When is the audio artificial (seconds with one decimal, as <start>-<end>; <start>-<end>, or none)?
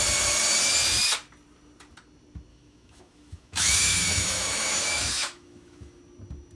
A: 2.5-6.0